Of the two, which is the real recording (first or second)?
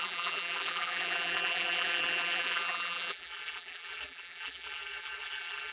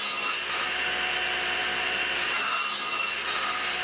second